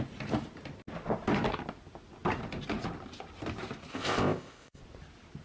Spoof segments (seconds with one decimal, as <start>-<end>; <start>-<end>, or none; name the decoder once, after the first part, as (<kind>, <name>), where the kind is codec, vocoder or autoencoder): 3.9-4.8 (codec, ZipCodec)